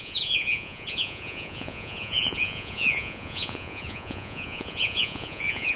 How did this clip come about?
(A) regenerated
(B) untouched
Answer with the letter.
A